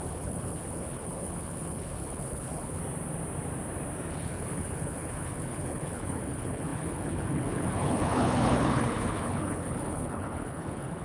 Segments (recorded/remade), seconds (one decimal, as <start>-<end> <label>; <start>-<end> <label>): 0.0-2.8 remade; 2.8-4.1 recorded; 4.1-11.0 remade